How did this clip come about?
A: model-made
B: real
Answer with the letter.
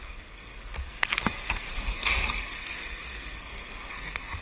A